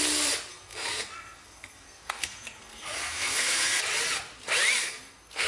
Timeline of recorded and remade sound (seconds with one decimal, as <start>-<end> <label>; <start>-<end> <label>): 0.0-0.5 recorded; 0.5-3.8 remade; 3.8-4.8 recorded; 4.8-5.5 remade